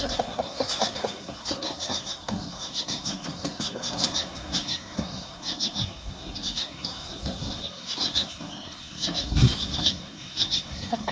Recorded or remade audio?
remade